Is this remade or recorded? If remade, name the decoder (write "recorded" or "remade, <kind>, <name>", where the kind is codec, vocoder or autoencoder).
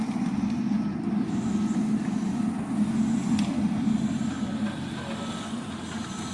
recorded